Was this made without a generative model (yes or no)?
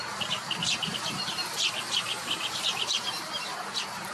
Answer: no